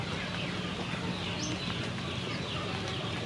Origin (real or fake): real